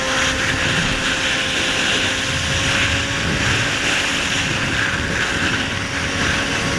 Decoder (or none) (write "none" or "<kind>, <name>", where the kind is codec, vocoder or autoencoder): none